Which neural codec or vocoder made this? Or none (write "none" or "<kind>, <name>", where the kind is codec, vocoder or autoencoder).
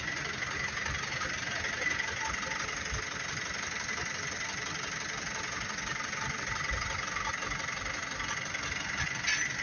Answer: none